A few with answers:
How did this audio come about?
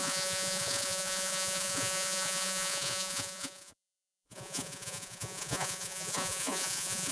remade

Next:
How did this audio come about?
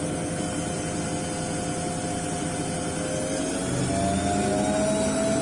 recorded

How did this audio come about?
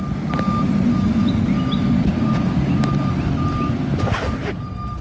recorded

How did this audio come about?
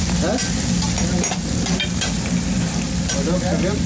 recorded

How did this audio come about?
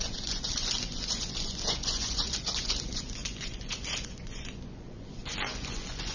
remade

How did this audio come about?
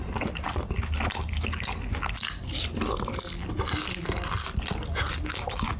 recorded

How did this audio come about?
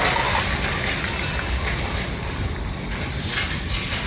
recorded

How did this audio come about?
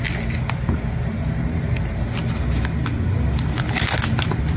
recorded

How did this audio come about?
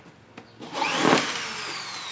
recorded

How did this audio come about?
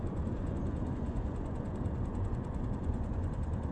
remade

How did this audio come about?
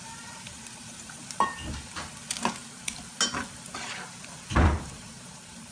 recorded